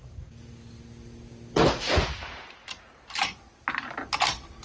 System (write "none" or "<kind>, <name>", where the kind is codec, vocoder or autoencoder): none